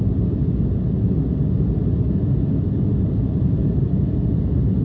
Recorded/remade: recorded